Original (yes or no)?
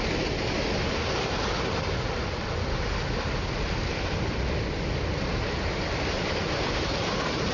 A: yes